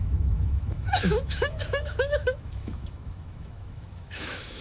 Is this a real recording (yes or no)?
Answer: no